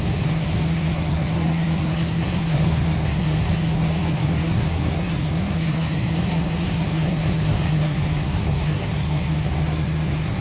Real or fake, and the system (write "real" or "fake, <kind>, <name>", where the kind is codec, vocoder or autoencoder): fake, codec, SNAC